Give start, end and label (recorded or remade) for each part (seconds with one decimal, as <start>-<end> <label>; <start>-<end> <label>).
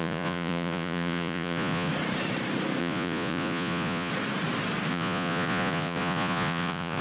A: 0.0-1.9 remade; 1.9-2.8 recorded; 2.8-4.1 remade; 4.1-4.9 recorded; 4.9-7.0 remade